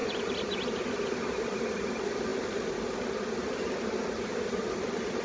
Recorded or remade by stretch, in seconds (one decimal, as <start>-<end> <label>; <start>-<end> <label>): 0.0-5.2 recorded